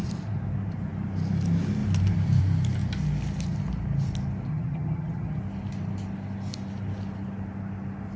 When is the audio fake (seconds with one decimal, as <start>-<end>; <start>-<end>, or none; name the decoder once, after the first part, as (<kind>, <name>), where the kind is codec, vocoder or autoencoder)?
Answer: 4.5-5.4 (vocoder, HiFi-GAN)